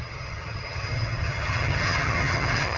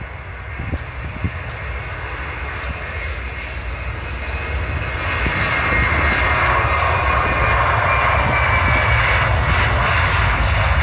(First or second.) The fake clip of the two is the first